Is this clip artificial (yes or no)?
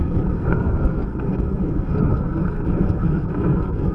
yes